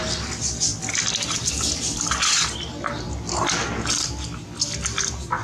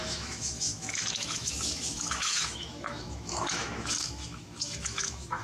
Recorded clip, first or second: first